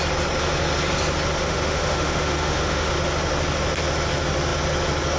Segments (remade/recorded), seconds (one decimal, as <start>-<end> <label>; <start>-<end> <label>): 0.0-1.4 recorded; 1.4-2.9 remade; 2.9-5.2 recorded